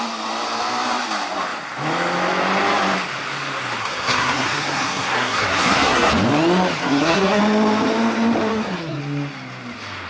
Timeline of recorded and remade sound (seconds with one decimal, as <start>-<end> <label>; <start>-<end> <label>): 0.0-3.8 recorded; 3.8-6.1 remade; 6.1-6.8 recorded; 6.8-7.4 remade; 7.4-8.5 recorded; 8.5-9.0 remade; 9.0-10.1 recorded